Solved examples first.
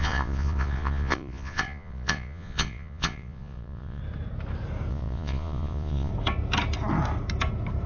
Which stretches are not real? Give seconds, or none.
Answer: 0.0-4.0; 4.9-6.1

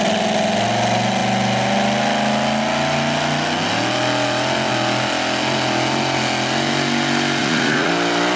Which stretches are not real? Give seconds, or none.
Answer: 7.4-7.9

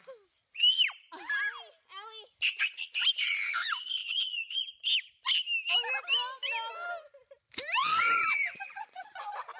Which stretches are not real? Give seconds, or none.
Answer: 4.0-4.7; 7.8-9.2

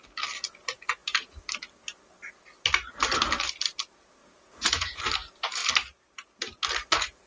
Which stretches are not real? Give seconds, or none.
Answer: 4.2-5.0